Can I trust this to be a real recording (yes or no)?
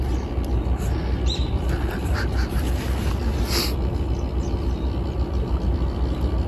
yes